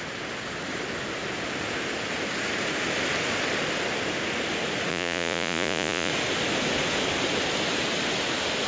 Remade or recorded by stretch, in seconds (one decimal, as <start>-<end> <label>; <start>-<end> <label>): 0.0-4.9 recorded; 4.9-6.1 remade; 6.1-8.7 recorded